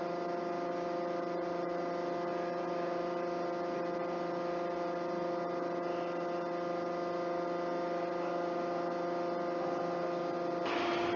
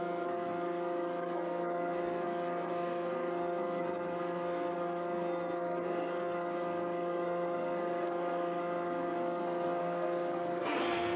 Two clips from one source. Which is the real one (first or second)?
first